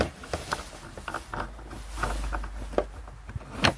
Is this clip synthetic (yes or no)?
no